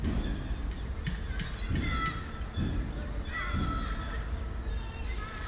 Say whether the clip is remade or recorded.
recorded